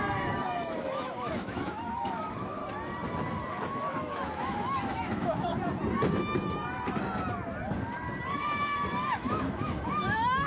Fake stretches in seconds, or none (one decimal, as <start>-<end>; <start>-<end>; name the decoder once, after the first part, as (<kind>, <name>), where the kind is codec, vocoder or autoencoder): 0.0-2.6 (autoencoder, DAC-VAE); 3.5-5.5; 8.3-10.5